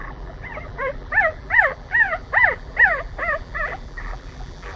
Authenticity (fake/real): fake